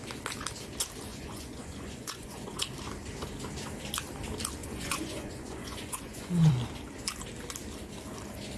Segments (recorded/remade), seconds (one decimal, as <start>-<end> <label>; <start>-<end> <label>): 0.0-1.1 recorded; 1.1-2.6 remade; 2.6-4.6 recorded; 4.6-6.5 remade; 6.5-8.6 recorded